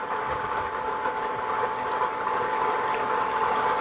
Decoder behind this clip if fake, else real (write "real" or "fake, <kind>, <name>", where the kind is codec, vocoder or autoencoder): real